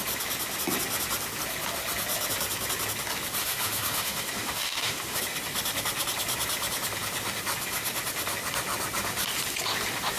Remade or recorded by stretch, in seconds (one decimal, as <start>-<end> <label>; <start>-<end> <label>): 0.0-3.4 recorded; 3.4-5.2 remade; 5.2-10.2 recorded